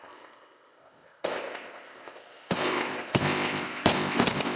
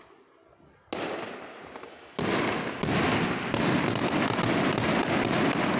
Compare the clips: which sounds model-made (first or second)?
first